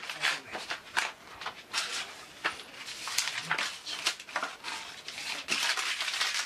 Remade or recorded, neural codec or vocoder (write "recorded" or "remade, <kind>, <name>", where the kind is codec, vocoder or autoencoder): recorded